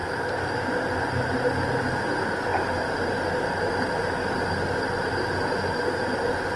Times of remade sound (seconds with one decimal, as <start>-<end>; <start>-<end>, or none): none